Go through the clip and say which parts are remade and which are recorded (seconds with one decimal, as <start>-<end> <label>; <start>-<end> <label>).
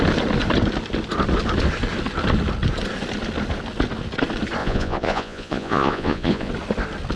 0.0-4.6 recorded; 4.6-6.5 remade; 6.5-7.2 recorded